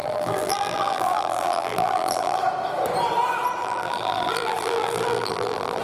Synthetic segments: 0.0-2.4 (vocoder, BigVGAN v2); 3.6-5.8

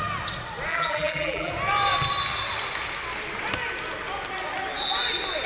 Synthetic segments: 0.7-1.5 (vocoder, BigVGAN v2)

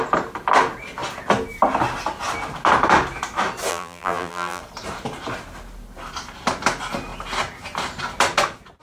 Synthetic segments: 3.7-4.6 (vocoder, BigVGAN v2)

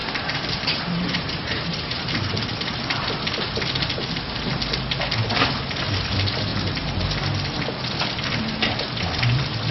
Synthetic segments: 0.0-2.8 (vocoder, BigVGAN v2)

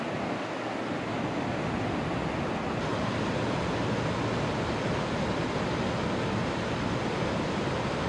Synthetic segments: none

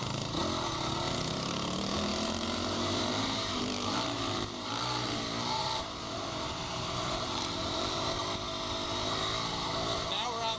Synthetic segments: 0.0-0.4 (vocoder, BigVGAN v2); 1.5-8.2; 9.5-10.6